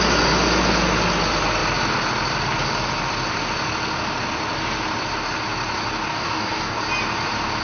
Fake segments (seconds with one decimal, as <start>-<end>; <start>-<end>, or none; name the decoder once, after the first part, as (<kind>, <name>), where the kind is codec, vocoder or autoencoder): 6.1-6.8 (codec, DAC)